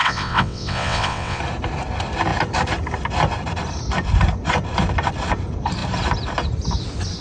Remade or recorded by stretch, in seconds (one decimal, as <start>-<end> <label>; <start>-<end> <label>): 0.0-1.4 remade; 1.4-7.2 recorded